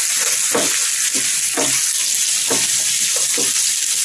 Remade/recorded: recorded